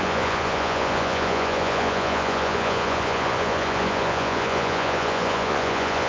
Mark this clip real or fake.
fake